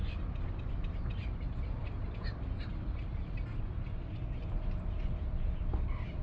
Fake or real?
real